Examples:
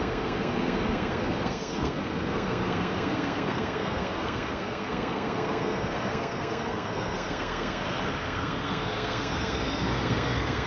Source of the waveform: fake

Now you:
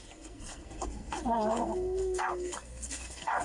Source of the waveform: fake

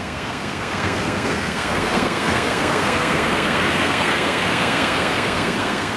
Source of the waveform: fake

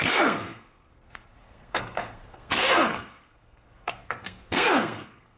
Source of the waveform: fake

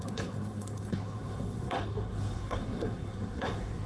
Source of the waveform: fake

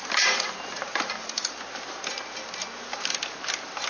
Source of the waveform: real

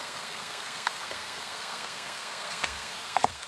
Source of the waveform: fake